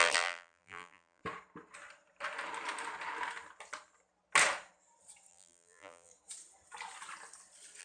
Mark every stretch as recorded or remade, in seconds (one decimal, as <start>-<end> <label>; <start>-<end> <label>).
0.0-1.2 remade; 1.2-5.3 recorded; 5.3-6.1 remade; 6.1-7.8 recorded